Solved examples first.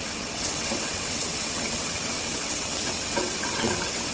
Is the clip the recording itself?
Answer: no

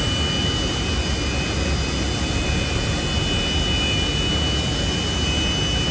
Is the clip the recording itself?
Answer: yes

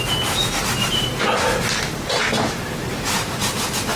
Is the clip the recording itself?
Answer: yes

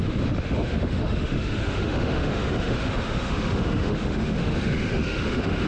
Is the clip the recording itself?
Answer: no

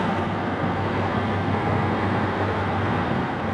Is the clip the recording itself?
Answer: no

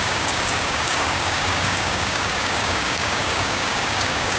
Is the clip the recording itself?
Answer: no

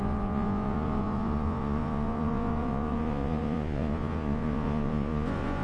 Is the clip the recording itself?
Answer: no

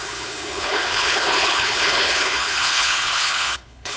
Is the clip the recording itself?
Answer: no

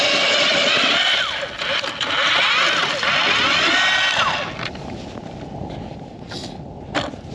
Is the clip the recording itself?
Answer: yes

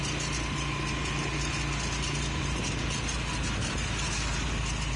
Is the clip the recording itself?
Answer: yes